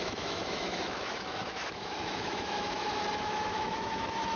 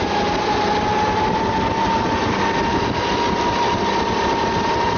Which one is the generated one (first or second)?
first